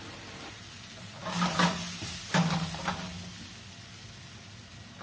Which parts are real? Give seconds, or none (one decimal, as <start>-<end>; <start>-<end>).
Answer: 0.0-5.0